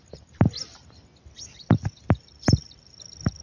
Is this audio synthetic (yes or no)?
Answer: no